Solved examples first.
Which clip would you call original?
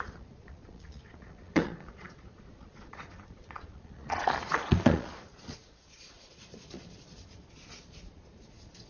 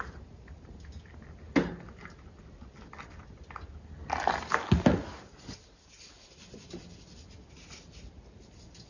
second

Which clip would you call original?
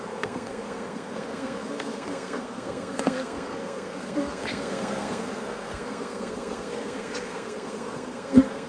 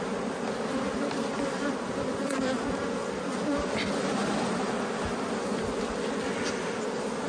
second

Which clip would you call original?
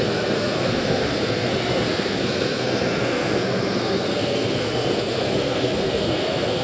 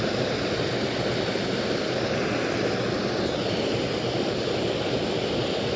second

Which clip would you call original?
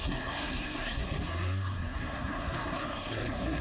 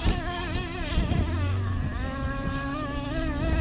second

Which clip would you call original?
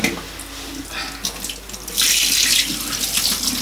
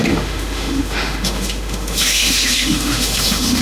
first